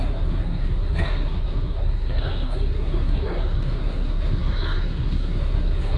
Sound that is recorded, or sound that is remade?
remade